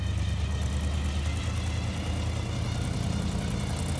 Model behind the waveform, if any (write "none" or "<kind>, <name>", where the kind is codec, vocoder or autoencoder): none